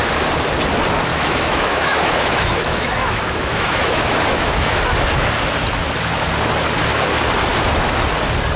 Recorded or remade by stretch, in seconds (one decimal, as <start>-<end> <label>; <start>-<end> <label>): 0.0-1.1 recorded; 1.1-4.8 remade; 4.8-8.6 recorded